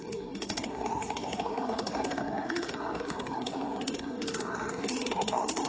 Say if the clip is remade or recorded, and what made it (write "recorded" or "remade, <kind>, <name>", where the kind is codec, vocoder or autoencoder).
remade, codec, SNAC